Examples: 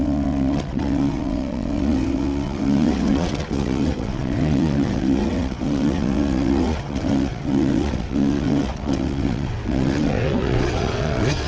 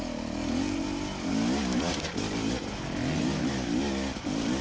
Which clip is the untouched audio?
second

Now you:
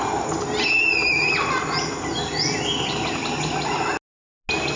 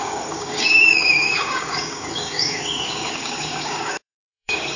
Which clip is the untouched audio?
first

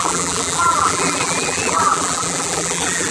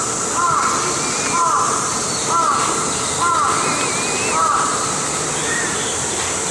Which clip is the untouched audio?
second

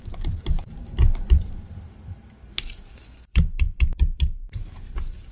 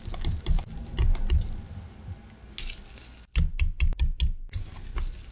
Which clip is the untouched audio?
second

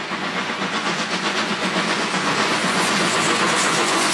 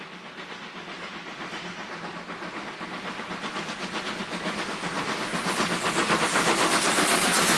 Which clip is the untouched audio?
second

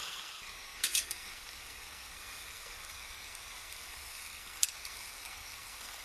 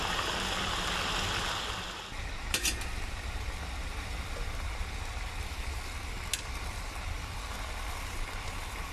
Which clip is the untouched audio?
second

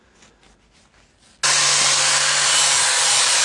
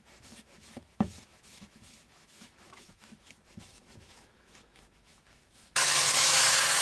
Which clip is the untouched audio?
first